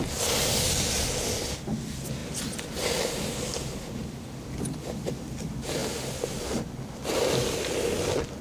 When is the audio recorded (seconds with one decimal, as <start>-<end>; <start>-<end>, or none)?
0.0-2.2; 3.3-8.4